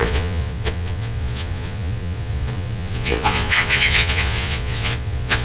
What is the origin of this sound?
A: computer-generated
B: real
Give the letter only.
A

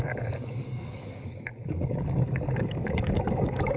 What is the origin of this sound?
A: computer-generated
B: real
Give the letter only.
A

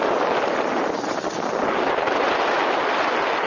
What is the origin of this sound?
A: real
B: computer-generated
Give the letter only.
A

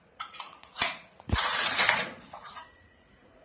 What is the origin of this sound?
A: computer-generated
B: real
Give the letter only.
A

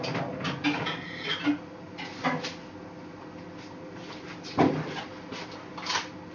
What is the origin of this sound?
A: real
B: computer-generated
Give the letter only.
A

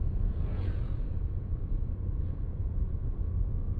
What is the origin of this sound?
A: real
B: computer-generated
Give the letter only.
B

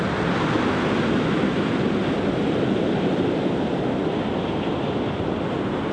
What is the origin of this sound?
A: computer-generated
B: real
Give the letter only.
B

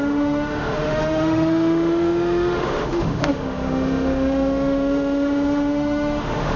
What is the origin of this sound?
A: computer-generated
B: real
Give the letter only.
A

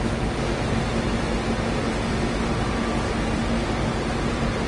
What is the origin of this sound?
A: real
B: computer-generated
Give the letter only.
A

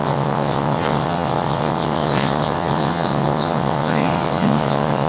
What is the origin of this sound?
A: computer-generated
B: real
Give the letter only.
A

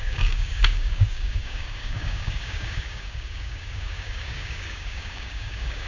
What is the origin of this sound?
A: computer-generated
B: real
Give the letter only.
A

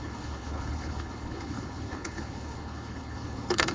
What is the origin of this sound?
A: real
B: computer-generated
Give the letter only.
B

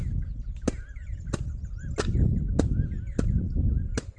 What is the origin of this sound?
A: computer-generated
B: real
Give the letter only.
B